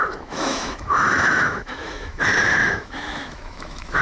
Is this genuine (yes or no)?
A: no